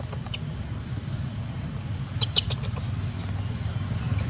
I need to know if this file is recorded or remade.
recorded